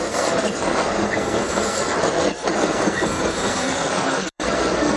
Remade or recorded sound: remade